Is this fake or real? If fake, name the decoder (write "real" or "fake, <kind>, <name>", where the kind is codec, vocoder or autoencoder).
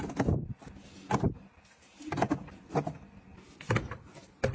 real